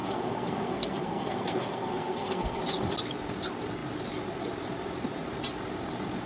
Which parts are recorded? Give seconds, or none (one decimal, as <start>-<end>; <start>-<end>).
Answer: 2.6-6.3